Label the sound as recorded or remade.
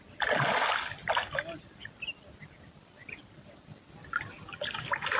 recorded